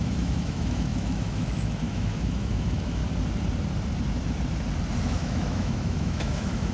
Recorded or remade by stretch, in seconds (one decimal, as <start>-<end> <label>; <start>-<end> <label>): 0.0-3.0 remade; 3.0-5.0 recorded; 5.0-6.7 remade